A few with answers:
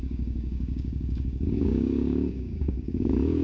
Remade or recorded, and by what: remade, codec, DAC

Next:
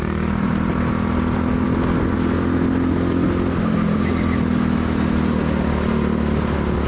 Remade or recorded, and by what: recorded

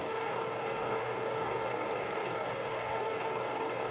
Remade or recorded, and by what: remade, codec, DAC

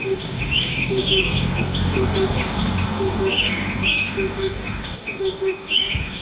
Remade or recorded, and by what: remade, codec, DAC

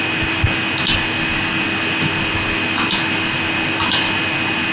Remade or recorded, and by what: recorded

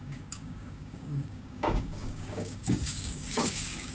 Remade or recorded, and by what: remade, codec, DAC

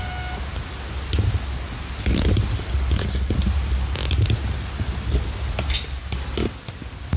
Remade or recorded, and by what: recorded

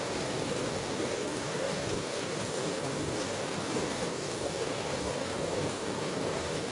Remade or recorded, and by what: remade, codec, DAC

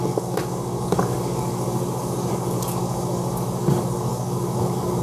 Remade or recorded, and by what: remade, codec, DAC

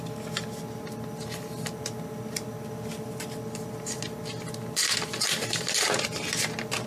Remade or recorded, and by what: recorded